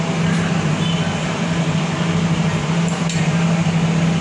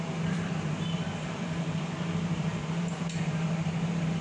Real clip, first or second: first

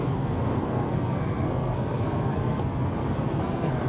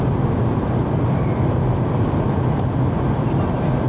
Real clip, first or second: second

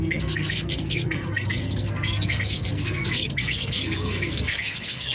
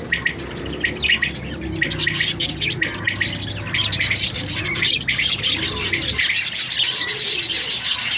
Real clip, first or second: second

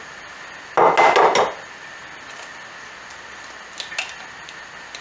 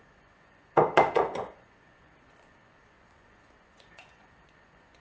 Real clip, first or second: first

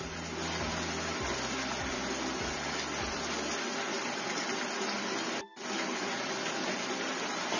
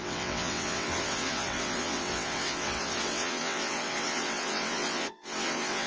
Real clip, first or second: first